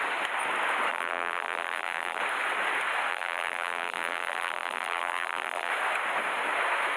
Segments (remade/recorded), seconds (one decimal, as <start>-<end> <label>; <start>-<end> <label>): 0.0-0.9 recorded; 0.9-2.2 remade; 2.2-3.1 recorded; 3.1-5.7 remade; 5.7-7.0 recorded